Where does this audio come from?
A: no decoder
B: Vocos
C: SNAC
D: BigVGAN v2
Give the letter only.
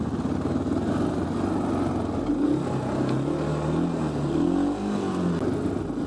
A